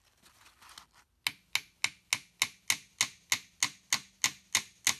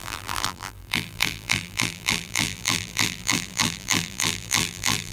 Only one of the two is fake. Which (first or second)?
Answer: second